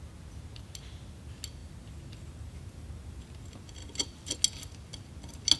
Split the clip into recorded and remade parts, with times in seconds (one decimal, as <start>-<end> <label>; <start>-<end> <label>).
0.0-1.6 recorded; 1.6-3.2 remade; 3.2-3.8 recorded; 3.8-4.4 remade; 4.4-5.6 recorded